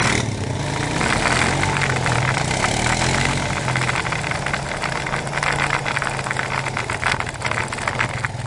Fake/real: real